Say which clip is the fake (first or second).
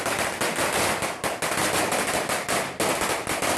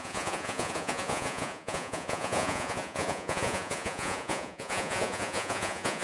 second